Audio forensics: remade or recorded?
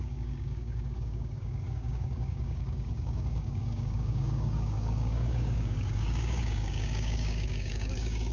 remade